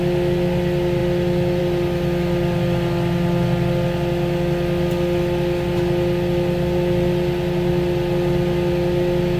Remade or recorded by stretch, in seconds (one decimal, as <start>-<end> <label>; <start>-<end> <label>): 0.0-9.4 recorded